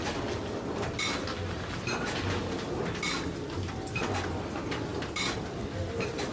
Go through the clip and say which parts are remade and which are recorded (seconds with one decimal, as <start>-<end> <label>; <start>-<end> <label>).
0.0-6.3 recorded